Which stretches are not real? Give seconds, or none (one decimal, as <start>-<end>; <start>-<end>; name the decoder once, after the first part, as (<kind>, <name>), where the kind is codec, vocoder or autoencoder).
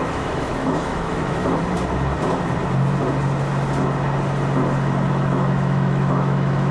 0.0-1.4 (autoencoder, DAC-VAE); 5.1-6.7